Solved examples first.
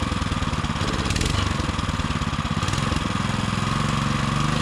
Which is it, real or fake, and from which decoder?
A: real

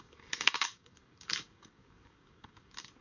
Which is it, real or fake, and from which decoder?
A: fake, codec, DAC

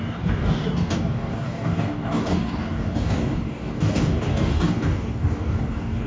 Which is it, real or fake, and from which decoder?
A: fake, codec, DAC